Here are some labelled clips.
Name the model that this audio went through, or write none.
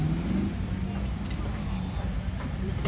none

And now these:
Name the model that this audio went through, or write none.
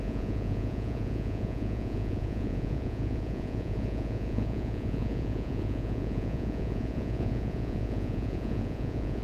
vocoder, Vocos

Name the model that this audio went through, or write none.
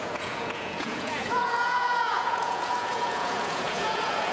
vocoder, Vocos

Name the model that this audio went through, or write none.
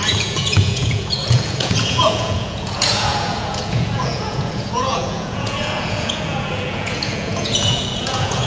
vocoder, Vocos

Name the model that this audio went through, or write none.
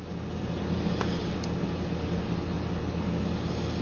none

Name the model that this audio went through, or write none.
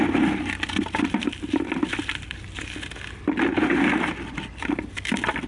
none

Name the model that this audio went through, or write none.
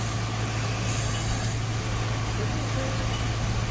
none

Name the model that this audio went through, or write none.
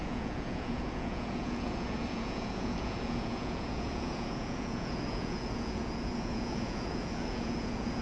vocoder, Vocos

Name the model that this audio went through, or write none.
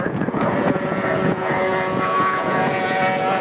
vocoder, Vocos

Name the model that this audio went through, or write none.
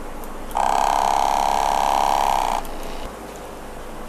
none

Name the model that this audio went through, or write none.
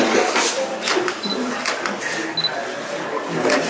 none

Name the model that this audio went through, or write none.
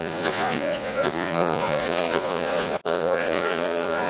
vocoder, Vocos